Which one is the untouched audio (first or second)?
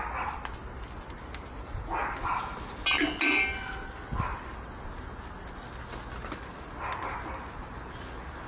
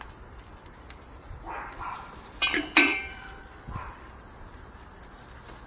first